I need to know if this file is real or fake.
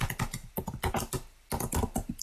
real